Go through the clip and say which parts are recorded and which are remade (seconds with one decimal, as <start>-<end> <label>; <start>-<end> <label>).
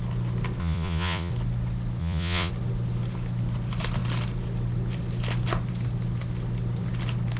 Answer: 0.0-0.6 recorded; 0.6-1.3 remade; 1.3-2.0 recorded; 2.0-2.5 remade; 2.5-7.4 recorded